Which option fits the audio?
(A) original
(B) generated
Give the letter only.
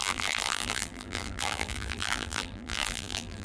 B